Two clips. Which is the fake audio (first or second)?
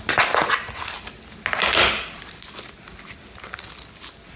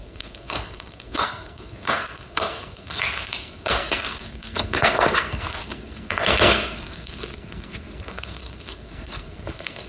second